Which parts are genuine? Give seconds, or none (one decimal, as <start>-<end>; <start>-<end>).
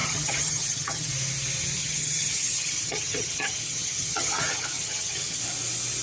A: 1.1-1.8; 5.4-6.0